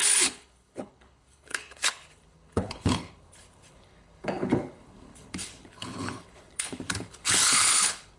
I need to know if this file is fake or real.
fake